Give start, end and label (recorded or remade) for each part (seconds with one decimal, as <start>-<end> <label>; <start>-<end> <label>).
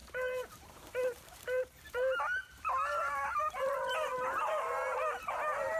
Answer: 0.0-3.5 remade; 3.5-4.1 recorded; 4.1-5.3 remade; 5.3-5.8 recorded